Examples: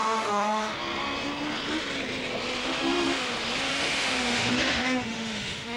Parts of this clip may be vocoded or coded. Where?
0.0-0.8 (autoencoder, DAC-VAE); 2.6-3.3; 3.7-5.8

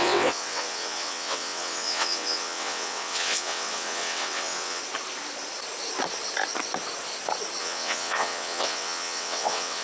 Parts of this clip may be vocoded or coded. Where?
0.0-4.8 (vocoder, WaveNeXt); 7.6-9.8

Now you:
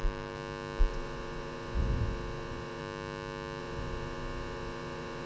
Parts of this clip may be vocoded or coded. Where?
0.9-2.8 (vocoder, Vocos); 3.6-5.3

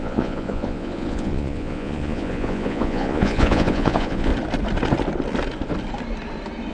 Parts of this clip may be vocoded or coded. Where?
0.0-4.3 (vocoder, Vocos)

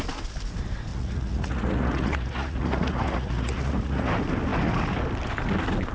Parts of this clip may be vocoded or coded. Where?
0.9-4.1 (vocoder, Vocos)

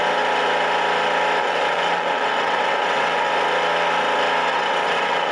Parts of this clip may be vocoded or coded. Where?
1.4-3.3 (vocoder, WaveNeXt); 4.5-5.3